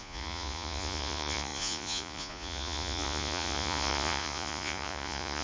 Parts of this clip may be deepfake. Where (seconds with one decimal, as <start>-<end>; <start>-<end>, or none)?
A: 0.0-5.4